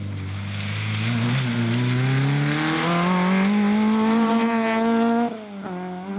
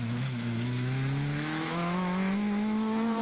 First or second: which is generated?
second